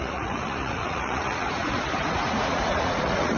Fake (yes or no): yes